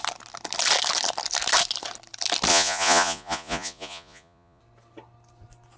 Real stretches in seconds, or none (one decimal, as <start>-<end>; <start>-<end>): 0.0-2.5; 4.6-5.8